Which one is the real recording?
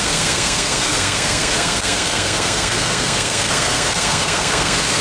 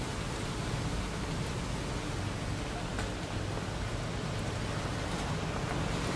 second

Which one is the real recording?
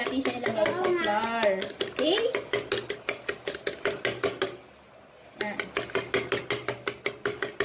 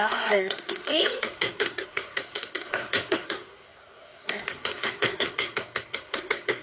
first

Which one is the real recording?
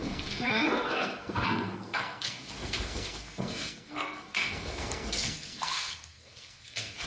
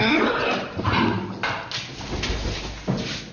second